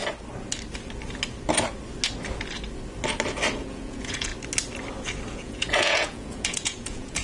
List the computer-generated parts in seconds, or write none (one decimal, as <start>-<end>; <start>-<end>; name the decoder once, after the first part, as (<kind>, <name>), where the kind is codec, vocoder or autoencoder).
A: 3.6-4.3 (vocoder, Vocos); 5.3-7.2